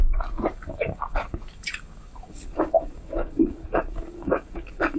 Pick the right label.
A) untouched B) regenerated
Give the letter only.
B